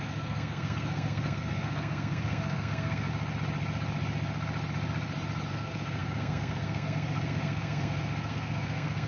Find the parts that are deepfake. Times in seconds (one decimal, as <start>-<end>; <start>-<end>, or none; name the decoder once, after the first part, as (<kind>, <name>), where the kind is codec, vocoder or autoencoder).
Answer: 0.0-3.1 (codec, SNAC); 5.5-9.1